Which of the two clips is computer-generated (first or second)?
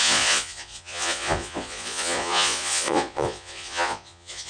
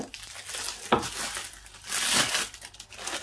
first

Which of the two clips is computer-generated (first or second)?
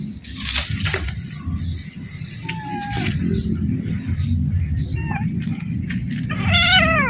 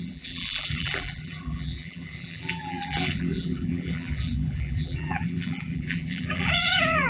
second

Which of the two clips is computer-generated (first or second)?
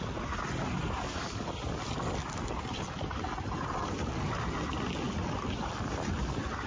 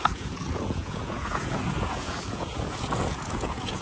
second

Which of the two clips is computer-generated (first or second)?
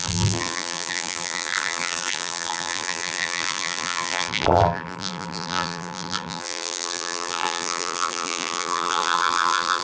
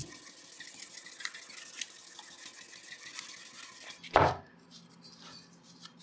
first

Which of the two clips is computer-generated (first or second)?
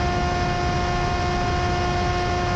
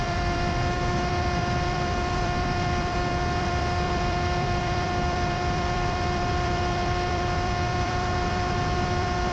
second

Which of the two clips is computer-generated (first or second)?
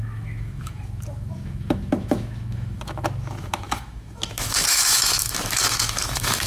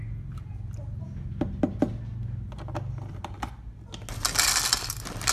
first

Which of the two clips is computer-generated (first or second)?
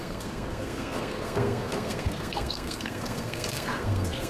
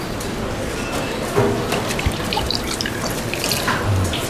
first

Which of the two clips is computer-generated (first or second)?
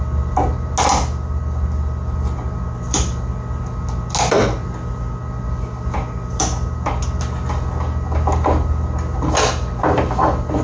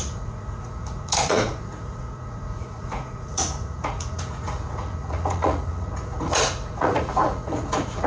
second